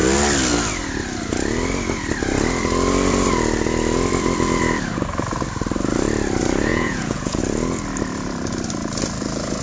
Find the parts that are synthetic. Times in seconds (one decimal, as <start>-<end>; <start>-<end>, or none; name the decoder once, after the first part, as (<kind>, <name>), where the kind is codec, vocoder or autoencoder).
6.7-7.4 (vocoder, Vocos)